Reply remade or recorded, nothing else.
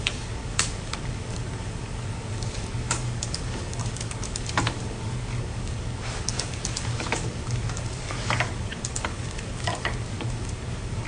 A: remade